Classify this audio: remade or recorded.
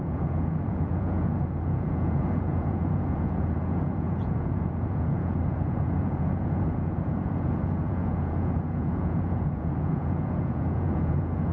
remade